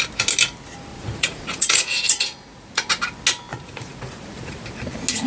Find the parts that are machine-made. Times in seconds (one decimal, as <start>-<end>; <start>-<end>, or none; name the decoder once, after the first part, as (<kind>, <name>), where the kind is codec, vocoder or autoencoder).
0.9-2.9 (vocoder, Vocos); 3.5-4.6